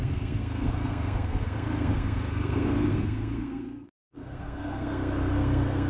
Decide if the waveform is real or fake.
fake